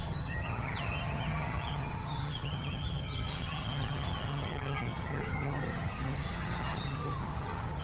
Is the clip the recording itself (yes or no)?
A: no